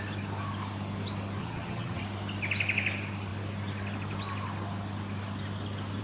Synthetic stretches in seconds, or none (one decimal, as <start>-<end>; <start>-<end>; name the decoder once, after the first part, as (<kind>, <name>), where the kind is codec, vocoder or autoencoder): 1.4-2.0 (vocoder, HiFi-GAN)